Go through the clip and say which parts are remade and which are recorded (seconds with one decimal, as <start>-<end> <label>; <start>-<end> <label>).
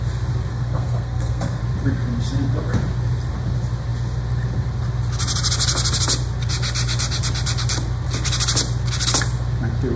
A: 0.0-0.5 recorded; 0.5-1.6 remade; 1.6-10.0 recorded